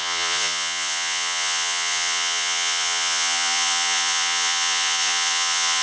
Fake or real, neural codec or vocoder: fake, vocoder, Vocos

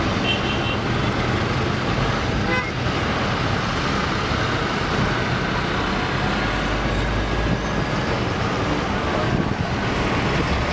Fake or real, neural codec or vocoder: real